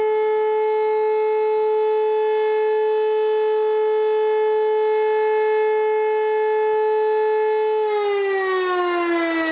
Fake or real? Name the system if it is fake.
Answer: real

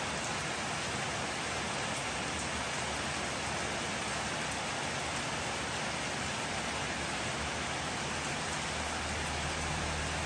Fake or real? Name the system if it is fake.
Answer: real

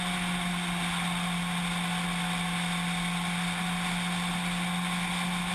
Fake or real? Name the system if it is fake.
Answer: real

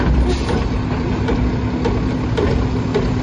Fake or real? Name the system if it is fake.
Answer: real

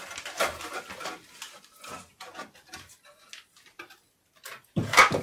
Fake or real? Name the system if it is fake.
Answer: real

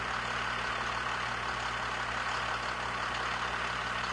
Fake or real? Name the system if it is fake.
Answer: real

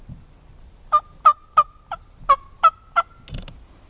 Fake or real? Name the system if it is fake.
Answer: real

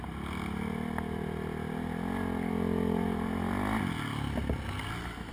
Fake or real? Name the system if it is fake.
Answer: real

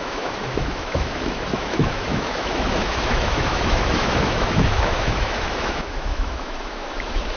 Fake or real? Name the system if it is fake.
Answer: fake, autoencoder, DAC-VAE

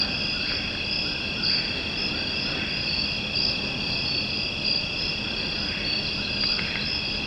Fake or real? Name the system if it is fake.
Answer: real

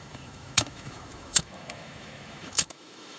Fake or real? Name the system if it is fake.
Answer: fake, autoencoder, DAC-VAE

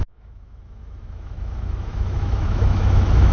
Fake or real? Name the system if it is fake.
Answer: fake, autoencoder, DAC-VAE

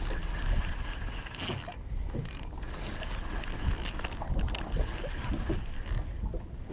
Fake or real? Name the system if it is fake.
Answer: real